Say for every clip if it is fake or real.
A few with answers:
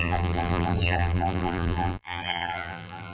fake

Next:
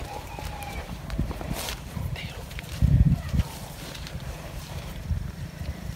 fake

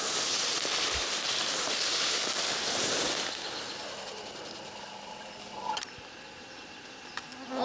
real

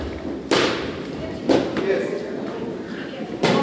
real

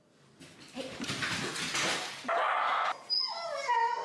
real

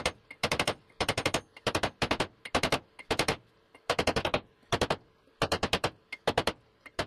fake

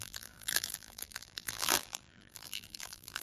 fake